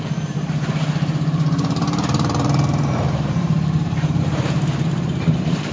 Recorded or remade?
remade